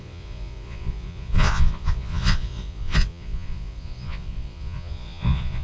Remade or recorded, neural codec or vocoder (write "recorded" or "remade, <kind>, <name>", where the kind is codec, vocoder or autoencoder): remade, vocoder, Vocos